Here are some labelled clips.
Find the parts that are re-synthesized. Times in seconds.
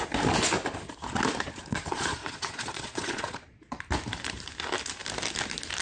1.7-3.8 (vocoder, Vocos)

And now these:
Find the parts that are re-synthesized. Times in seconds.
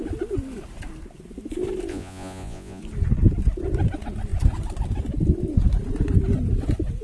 1.9-2.8 (vocoder, Vocos)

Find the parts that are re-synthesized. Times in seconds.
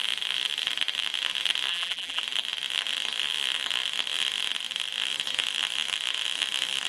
1.7-2.2 (vocoder, BigVGAN v2)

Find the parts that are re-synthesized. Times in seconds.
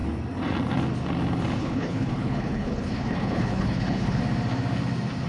1.6-4.2 (codec, HILCodec)